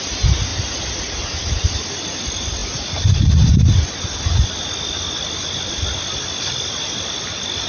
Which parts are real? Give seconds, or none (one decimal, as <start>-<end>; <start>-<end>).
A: 0.0-7.7